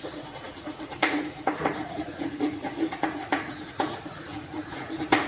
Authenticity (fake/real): fake